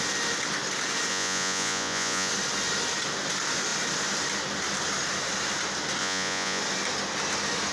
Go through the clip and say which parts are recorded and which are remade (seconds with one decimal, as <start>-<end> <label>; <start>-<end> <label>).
0.0-1.1 recorded; 1.1-2.3 remade; 2.3-6.0 recorded; 6.0-6.6 remade; 6.6-7.7 recorded